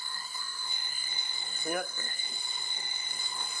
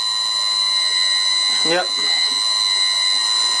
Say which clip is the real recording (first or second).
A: second